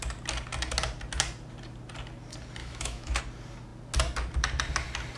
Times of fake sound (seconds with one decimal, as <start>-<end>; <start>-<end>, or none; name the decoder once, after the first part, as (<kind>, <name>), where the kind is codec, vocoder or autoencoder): 2.6-3.2 (autoencoder, DAC-VAE)